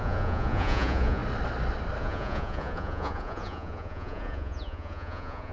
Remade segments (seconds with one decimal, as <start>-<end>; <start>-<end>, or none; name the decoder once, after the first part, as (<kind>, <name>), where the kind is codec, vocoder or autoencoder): 0.0-1.2 (vocoder, Vocos); 2.0-5.5